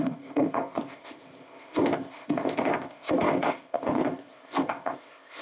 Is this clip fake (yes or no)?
yes